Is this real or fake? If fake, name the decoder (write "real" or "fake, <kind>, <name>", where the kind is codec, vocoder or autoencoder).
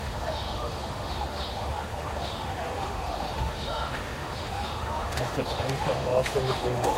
fake, autoencoder, DAC-VAE